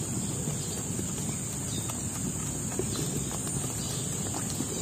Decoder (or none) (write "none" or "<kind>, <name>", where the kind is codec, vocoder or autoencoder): none